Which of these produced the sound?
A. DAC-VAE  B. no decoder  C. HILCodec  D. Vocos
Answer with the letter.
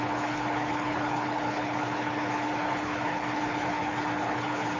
C